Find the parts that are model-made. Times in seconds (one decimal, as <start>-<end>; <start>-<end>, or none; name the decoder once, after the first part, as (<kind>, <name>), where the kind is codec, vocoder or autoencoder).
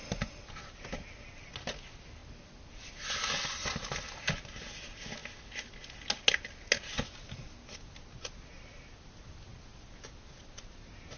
none